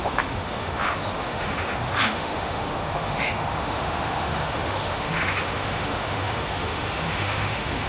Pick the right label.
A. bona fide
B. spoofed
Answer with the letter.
B